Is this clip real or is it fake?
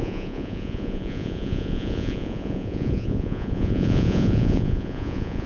fake